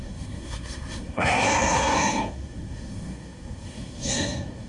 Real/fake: fake